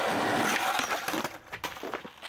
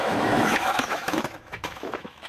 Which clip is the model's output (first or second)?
second